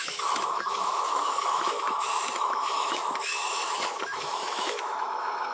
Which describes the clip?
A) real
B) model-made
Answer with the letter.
B